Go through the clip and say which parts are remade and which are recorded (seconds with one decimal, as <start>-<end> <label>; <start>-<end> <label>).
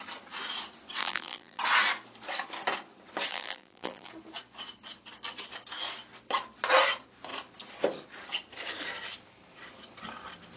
0.0-1.0 recorded; 1.0-1.6 remade; 1.6-3.3 recorded; 3.3-4.1 remade; 4.1-10.6 recorded